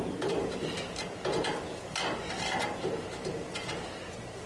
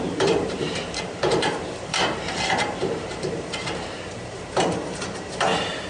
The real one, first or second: first